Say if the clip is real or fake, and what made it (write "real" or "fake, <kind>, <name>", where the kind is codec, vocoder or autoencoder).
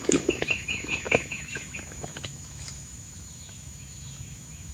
fake, autoencoder, DAC-VAE